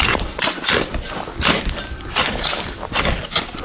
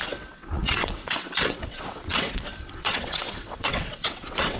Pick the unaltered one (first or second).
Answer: first